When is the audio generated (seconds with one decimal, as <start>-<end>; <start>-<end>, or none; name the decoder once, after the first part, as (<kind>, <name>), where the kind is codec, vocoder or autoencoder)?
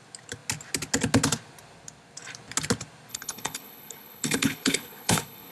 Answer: 3.1-5.5 (codec, HILCodec)